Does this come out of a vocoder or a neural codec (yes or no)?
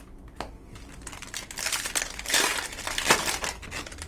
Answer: no